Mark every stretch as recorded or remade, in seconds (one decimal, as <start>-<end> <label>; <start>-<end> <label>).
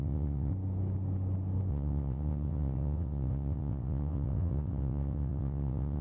0.0-0.5 remade; 0.5-1.7 recorded; 1.7-6.0 remade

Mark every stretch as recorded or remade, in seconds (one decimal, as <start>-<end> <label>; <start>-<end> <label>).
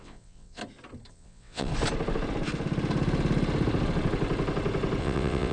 0.0-0.6 remade; 0.6-1.1 recorded; 1.1-1.7 remade; 1.7-5.0 recorded; 5.0-5.5 remade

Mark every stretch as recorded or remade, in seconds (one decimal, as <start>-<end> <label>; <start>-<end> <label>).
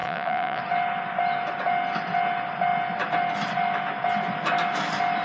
0.0-0.6 remade; 0.6-5.2 recorded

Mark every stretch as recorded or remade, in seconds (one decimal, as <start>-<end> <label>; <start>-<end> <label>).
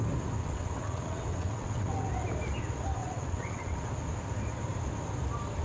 0.0-0.4 recorded; 0.4-2.1 remade; 2.1-3.0 recorded; 3.0-3.9 remade; 3.9-5.6 recorded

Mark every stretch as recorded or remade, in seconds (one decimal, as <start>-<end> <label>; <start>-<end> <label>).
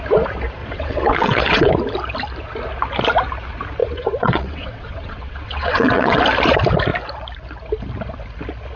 0.0-0.6 recorded; 0.6-1.7 remade; 1.7-3.8 recorded; 3.8-6.2 remade; 6.2-8.8 recorded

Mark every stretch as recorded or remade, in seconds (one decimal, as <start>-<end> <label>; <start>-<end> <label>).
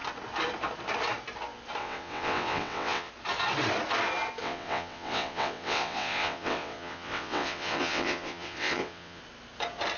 0.0-1.8 recorded; 1.8-3.1 remade; 3.1-4.4 recorded; 4.4-9.2 remade; 9.2-10.0 recorded